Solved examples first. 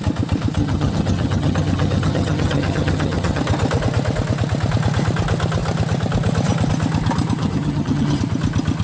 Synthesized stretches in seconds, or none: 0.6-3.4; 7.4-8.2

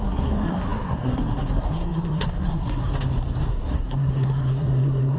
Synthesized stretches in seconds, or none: 0.0-2.9; 3.5-5.2

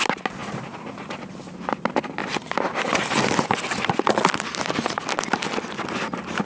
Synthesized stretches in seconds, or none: none

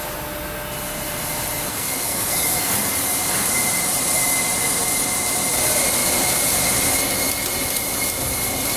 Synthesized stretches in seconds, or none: 1.7-2.7

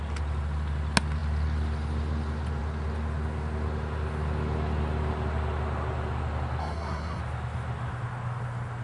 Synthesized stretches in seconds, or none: 6.6-7.2